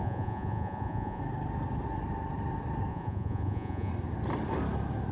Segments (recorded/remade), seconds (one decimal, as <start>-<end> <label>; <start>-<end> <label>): 0.0-1.2 remade; 1.2-2.9 recorded; 2.9-3.9 remade; 3.9-5.1 recorded